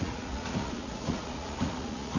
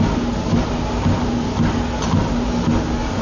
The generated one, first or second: first